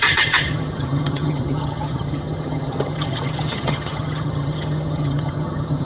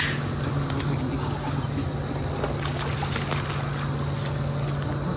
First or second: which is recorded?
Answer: second